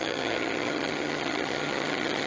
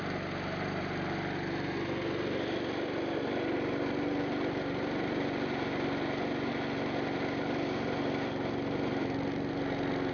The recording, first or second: second